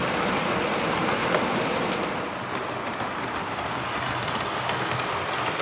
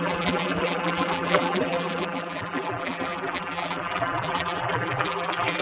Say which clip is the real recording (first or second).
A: first